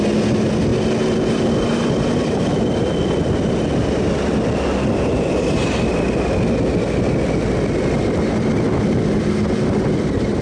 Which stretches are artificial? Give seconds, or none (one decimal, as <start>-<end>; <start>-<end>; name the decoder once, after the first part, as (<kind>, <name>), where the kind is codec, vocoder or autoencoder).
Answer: none